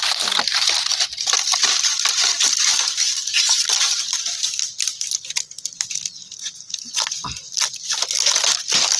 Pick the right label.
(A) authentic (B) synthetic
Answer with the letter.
B